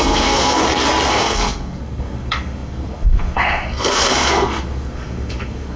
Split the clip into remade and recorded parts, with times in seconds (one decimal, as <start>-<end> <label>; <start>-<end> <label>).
0.0-0.6 remade; 0.6-1.1 recorded; 1.1-5.8 remade